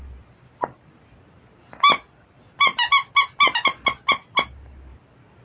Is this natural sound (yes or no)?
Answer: yes